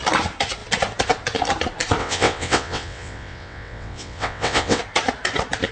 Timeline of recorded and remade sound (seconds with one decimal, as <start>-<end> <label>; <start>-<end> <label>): 0.0-2.0 recorded; 2.0-4.8 remade; 4.8-5.7 recorded